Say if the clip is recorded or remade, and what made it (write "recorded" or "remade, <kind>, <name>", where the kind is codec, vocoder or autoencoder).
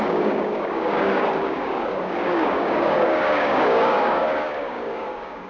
remade, codec, DAC